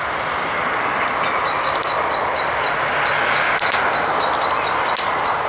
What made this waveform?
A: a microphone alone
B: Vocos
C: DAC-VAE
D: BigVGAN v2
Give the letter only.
A